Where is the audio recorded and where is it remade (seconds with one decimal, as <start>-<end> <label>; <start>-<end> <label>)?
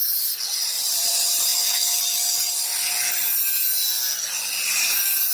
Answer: 0.0-0.5 recorded; 0.5-1.5 remade; 1.5-4.7 recorded; 4.7-5.3 remade